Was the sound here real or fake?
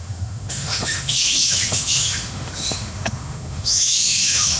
fake